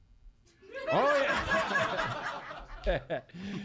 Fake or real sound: real